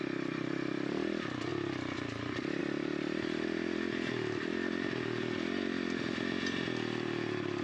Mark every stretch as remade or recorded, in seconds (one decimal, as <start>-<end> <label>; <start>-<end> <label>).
0.0-1.5 remade; 1.5-2.6 recorded; 2.6-7.6 remade